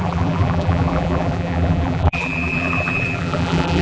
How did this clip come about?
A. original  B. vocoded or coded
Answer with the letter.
B